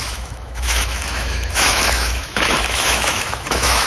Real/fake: fake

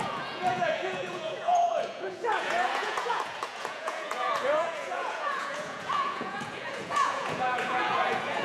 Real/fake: fake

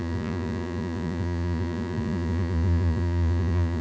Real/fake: fake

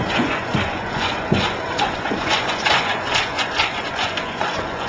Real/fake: fake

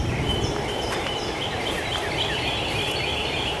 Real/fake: fake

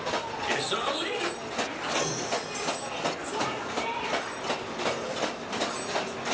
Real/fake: real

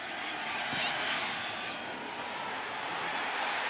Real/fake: real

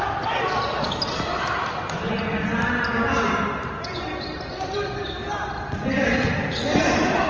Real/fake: real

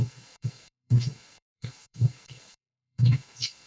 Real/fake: fake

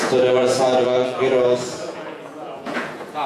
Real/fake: fake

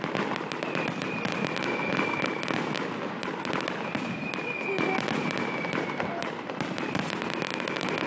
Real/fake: real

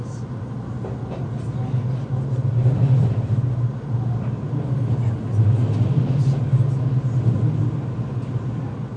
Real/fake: real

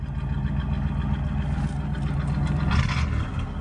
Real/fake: real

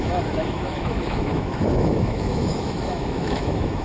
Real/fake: fake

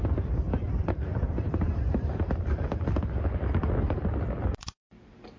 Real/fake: fake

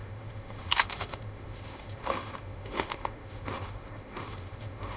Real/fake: fake